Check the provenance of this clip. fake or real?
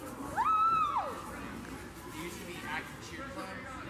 real